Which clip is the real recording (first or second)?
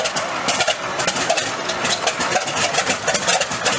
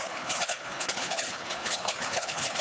first